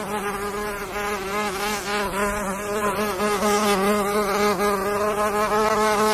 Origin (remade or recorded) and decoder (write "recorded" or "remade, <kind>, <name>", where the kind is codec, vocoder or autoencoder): recorded